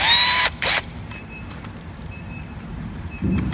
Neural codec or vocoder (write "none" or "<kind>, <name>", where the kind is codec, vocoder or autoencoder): vocoder, BigVGAN v2